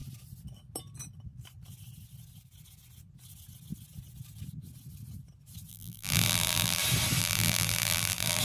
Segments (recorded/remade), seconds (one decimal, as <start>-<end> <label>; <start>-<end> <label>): 0.0-5.7 recorded; 5.7-6.8 remade; 6.8-7.2 recorded; 7.2-8.4 remade